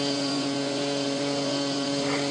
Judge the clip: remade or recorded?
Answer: remade